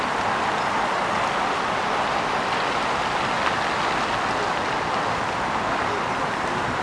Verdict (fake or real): real